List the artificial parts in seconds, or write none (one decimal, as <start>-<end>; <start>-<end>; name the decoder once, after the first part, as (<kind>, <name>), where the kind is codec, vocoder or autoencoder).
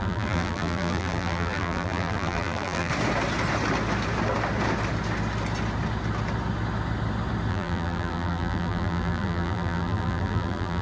0.0-2.9 (vocoder, BigVGAN v2); 7.5-10.8